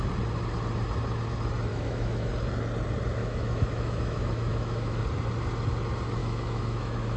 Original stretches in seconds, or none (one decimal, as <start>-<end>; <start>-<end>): 0.0-1.7; 2.3-3.2; 5.0-6.2